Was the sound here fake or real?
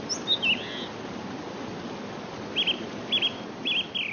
real